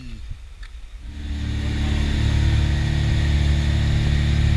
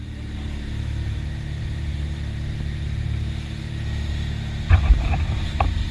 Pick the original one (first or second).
first